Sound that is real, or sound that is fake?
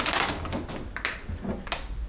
real